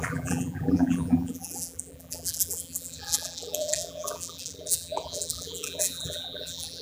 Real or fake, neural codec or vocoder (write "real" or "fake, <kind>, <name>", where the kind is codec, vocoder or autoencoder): fake, vocoder, BigVGAN v2